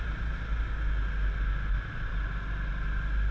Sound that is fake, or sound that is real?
real